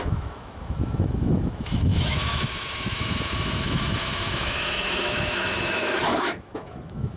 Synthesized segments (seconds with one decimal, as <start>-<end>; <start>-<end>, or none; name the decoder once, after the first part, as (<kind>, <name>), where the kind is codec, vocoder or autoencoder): 0.0-7.2 (autoencoder, DAC-VAE)